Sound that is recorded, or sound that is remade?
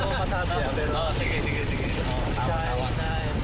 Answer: recorded